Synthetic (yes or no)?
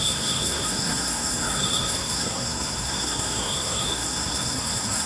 yes